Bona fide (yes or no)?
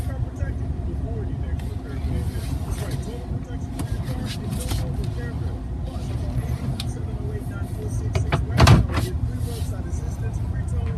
yes